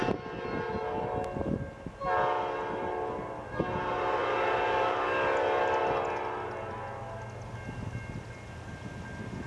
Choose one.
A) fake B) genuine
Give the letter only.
B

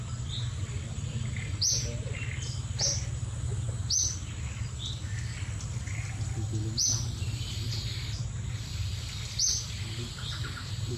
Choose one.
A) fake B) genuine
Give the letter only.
B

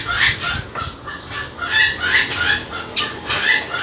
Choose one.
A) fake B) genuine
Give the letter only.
B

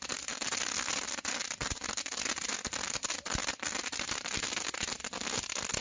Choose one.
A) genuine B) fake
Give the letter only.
A